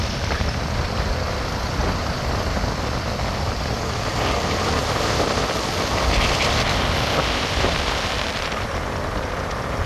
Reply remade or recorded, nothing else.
recorded